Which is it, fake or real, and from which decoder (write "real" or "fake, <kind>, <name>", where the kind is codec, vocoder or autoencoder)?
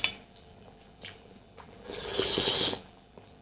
fake, vocoder, BigVGAN v2